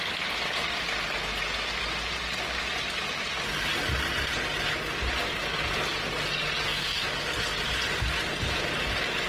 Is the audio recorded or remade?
recorded